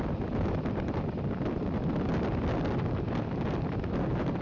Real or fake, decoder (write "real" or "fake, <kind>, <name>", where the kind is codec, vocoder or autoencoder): real